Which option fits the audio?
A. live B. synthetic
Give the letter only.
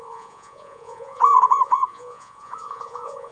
B